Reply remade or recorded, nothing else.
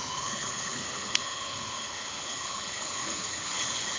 remade